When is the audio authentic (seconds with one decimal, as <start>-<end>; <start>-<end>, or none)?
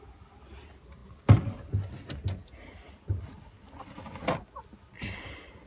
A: 0.0-5.7